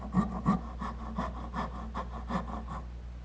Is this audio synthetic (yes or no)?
no